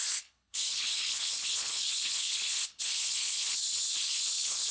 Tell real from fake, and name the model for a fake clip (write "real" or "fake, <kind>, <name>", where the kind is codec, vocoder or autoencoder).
fake, codec, HILCodec